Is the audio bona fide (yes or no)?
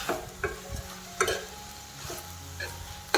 yes